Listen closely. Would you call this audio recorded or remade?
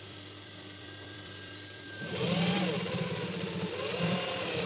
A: remade